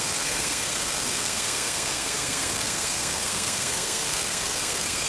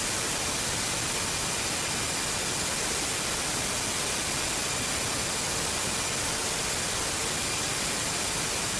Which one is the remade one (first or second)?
first